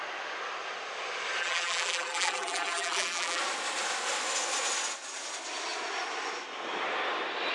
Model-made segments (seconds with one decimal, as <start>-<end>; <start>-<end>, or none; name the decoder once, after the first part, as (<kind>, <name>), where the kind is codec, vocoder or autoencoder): 1.4-3.4 (vocoder, BigVGAN v2)